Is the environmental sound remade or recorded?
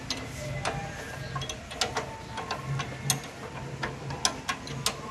recorded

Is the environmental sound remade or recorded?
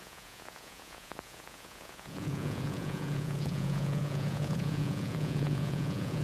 remade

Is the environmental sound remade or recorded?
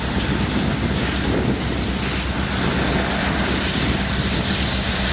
recorded